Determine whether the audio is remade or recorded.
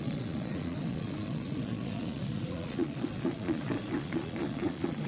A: remade